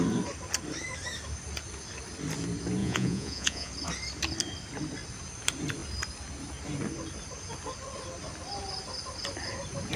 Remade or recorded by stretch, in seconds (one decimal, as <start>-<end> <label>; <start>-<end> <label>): 0.0-2.8 recorded; 2.8-3.7 remade; 3.7-10.0 recorded